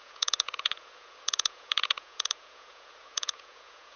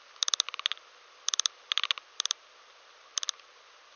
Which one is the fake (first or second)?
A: first